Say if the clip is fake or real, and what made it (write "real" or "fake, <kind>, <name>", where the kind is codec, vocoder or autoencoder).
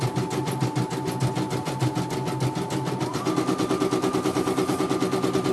real